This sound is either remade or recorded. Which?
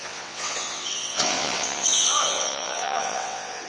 remade